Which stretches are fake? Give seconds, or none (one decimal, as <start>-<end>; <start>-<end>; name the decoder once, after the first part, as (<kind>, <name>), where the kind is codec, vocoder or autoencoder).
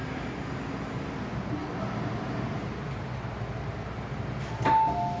none